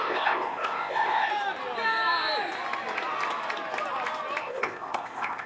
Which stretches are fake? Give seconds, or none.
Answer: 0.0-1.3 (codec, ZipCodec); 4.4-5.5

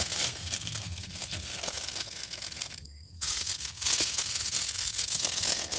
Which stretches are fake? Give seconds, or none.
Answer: 0.0-5.8 (codec, SNAC)

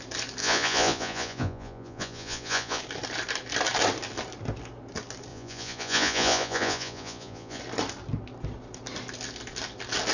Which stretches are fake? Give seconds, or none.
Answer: 0.4-2.8 (vocoder, Vocos); 5.3-7.6

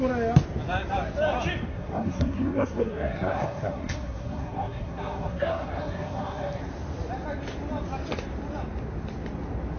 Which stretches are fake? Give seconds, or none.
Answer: 1.7-6.6 (codec, SNAC)

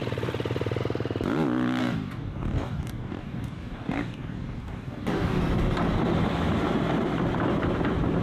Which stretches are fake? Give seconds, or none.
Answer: 1.8-5.4 (codec, DAC)

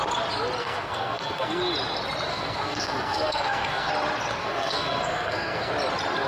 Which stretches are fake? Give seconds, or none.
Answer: 0.6-1.6 (codec, SNAC); 2.3-3.9; 4.4-5.7